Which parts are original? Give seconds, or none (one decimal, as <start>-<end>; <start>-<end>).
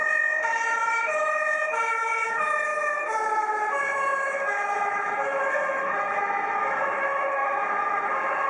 none